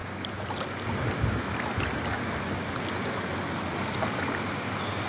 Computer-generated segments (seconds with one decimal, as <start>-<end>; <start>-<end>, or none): none